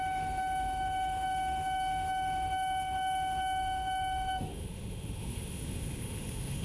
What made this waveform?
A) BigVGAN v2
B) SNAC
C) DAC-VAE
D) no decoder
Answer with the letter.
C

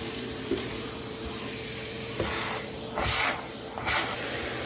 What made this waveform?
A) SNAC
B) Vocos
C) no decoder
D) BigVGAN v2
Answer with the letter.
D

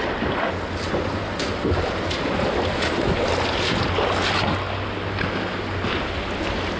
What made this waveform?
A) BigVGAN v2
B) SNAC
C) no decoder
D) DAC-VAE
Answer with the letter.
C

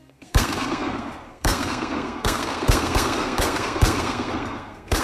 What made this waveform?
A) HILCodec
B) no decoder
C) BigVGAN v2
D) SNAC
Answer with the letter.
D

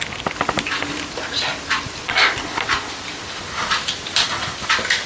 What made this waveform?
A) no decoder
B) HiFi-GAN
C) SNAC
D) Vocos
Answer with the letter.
A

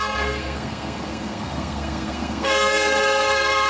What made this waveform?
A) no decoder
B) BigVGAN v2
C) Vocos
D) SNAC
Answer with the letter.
D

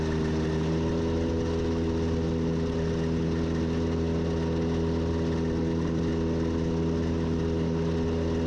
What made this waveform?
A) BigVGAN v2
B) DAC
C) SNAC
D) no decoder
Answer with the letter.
D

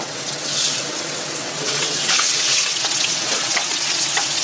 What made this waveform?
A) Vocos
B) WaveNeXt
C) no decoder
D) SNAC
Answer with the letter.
B